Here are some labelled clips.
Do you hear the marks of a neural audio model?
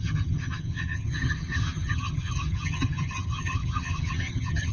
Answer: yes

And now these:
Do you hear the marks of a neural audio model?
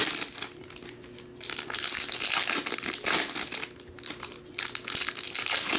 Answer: no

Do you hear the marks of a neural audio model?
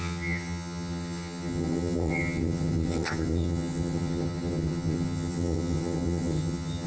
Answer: yes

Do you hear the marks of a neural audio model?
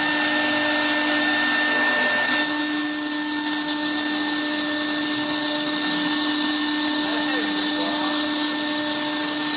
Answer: no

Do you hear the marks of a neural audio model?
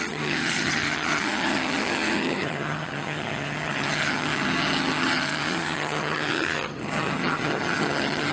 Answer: yes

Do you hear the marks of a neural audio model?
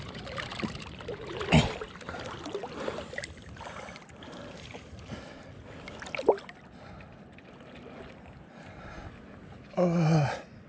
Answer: no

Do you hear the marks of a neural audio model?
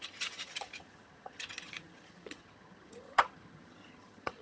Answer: yes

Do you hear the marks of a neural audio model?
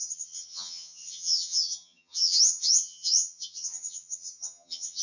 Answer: yes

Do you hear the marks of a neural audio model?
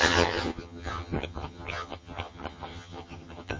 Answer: yes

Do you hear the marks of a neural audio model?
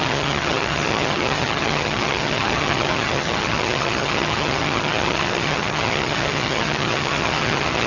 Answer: yes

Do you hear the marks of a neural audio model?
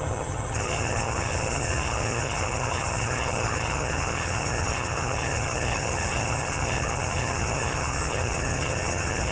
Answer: yes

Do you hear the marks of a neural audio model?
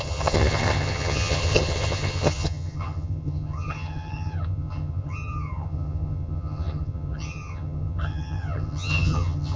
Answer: yes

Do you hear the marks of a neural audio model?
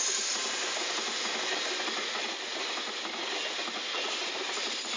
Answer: no